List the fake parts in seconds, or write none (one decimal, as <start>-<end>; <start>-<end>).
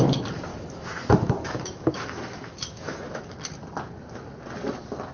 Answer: 0.5-3.2